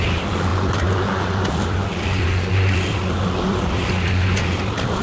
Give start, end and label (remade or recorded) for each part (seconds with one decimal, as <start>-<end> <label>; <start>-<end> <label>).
0.0-2.9 recorded; 2.9-5.0 remade